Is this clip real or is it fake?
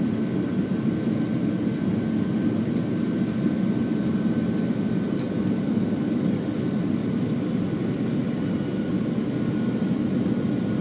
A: real